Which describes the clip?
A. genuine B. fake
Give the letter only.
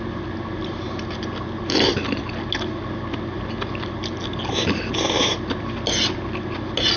A